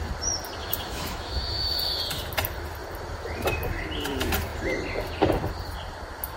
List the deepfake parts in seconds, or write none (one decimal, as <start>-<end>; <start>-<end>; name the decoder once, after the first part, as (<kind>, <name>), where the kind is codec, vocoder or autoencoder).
0.6-2.0 (autoencoder, DAC-VAE)